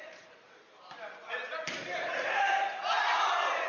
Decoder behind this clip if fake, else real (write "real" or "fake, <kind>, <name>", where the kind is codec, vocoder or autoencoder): fake, vocoder, BigVGAN v2